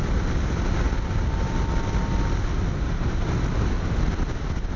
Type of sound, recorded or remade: recorded